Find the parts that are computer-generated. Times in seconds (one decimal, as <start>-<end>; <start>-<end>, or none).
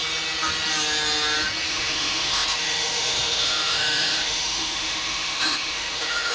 1.7-6.3